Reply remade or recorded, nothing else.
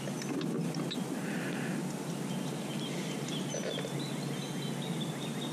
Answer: recorded